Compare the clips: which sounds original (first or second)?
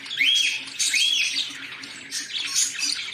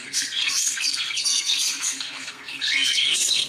first